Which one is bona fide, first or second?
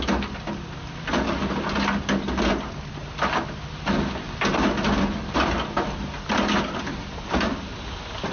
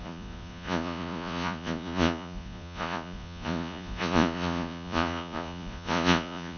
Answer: first